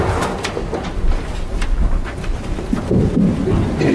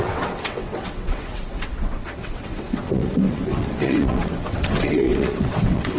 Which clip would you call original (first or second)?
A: first